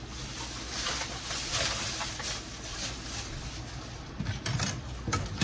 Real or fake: real